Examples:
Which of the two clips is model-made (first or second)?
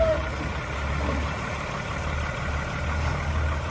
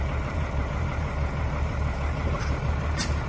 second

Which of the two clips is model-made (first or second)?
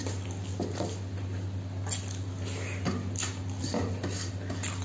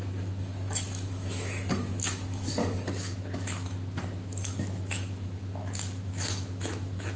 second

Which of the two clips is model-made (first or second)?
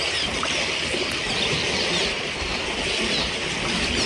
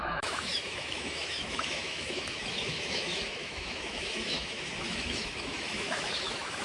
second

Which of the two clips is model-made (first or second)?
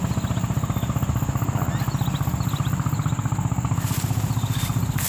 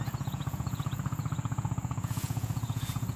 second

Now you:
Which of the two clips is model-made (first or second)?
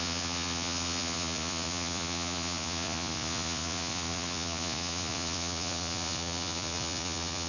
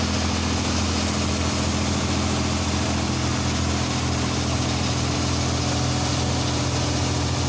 first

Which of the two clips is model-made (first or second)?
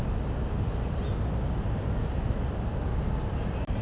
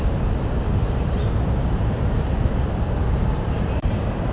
second